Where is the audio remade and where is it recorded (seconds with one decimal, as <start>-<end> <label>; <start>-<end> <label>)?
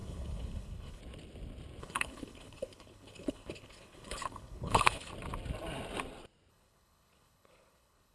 0.0-1.0 remade; 1.0-1.8 recorded; 1.8-5.1 remade; 5.1-6.5 recorded; 6.5-8.1 remade